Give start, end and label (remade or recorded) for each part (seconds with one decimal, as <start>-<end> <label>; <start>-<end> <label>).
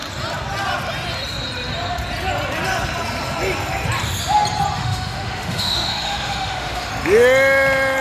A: 0.0-4.8 recorded; 4.8-6.9 remade; 6.9-8.0 recorded